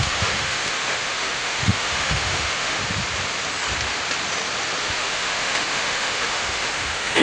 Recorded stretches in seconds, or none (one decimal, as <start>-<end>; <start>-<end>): 2.8-4.8